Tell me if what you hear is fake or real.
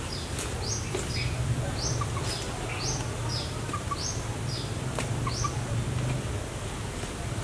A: real